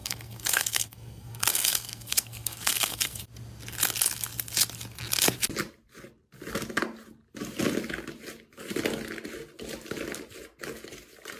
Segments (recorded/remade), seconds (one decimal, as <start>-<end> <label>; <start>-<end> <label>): 0.0-3.2 remade; 3.2-11.4 recorded